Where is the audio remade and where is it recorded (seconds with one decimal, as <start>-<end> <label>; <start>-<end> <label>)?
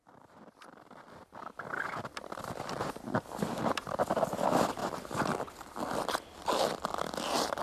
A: 0.0-7.6 recorded